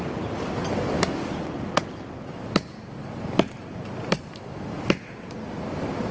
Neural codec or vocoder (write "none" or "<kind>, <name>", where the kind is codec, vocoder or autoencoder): none